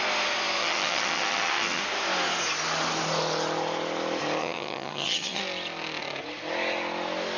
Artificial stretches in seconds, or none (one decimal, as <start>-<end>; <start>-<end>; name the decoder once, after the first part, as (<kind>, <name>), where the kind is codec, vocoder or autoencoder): 0.6-1.8 (vocoder, HiFi-GAN); 4.4-5.4